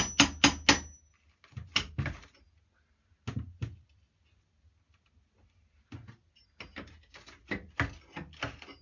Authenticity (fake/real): real